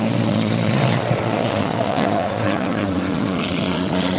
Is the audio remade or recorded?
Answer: remade